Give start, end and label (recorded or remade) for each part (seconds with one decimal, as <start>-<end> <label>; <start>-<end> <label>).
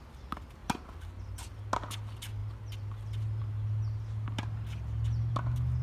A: 0.0-5.8 recorded